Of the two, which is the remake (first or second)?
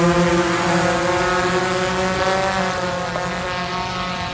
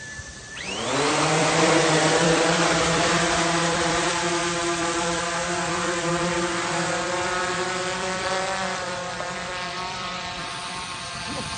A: second